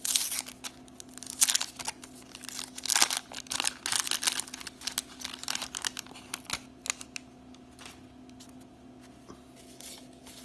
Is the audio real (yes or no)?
yes